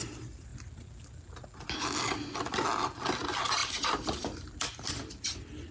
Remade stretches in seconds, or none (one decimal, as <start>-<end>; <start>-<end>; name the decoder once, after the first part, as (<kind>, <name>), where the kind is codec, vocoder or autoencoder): 3.6-4.6 (vocoder, BigVGAN v2)